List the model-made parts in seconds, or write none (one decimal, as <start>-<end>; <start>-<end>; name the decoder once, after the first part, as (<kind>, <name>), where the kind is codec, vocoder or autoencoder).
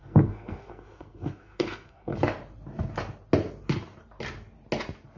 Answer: 0.0-2.1 (codec, SNAC)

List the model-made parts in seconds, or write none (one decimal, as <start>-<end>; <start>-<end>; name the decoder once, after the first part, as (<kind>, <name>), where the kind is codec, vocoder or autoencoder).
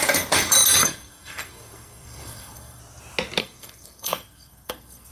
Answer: 0.8-2.8 (codec, SNAC); 3.4-5.1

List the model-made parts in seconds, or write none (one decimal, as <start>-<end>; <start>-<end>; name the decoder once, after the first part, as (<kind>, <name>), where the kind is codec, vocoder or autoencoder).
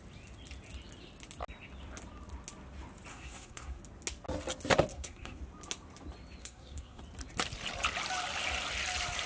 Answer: 3.1-3.8 (codec, SNAC); 4.9-5.4; 6.4-7.0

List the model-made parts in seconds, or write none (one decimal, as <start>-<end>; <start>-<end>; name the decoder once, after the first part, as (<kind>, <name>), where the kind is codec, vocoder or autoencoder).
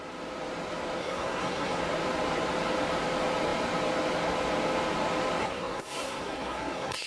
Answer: 1.0-1.8 (codec, SNAC); 5.4-7.1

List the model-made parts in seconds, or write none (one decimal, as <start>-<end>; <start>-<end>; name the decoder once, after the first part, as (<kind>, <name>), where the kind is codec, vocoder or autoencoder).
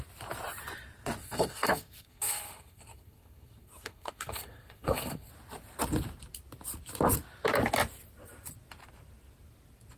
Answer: 1.2-5.3 (codec, SNAC)